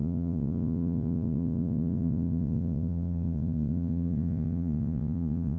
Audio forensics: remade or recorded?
remade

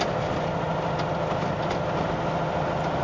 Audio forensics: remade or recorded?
recorded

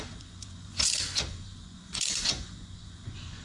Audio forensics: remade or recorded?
remade